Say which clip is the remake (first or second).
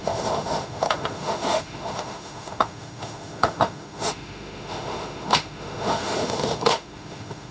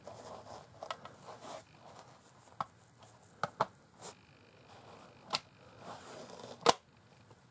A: first